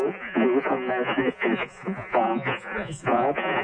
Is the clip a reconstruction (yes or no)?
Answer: yes